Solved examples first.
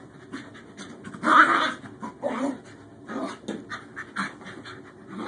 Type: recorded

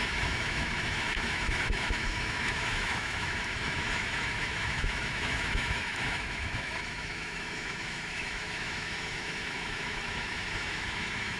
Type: remade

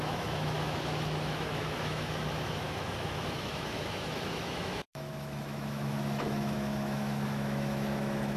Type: remade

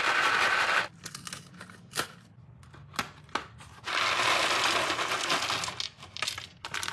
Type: recorded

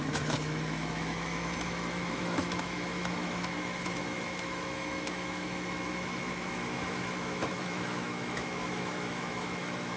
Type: remade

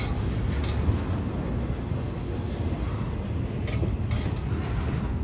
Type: recorded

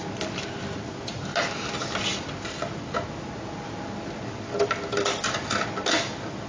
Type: recorded